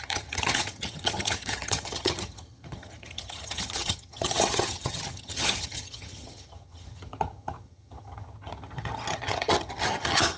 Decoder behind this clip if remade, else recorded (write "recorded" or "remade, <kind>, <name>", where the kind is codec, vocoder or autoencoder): remade, vocoder, HiFi-GAN